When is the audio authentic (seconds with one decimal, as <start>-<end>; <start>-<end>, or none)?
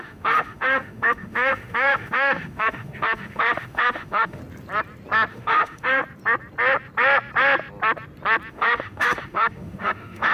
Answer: 4.4-5.3; 6.0-8.5